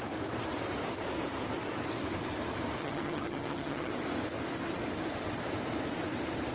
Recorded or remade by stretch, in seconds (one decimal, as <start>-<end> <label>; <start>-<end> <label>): 0.0-2.8 recorded; 2.8-3.9 remade; 3.9-6.5 recorded